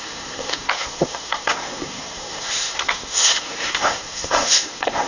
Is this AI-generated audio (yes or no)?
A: yes